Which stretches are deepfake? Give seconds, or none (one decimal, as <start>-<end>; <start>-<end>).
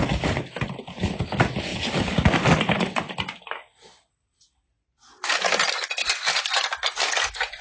none